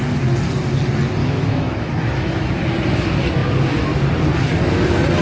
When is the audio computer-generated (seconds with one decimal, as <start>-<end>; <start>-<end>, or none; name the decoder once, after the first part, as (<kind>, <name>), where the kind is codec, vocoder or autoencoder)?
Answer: 1.2-2.5 (autoencoder, DAC-VAE)